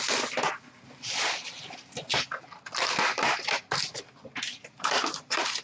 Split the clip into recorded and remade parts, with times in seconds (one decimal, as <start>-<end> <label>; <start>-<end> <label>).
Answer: 0.0-5.6 recorded